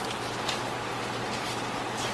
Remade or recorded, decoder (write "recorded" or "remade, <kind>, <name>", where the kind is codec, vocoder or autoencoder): recorded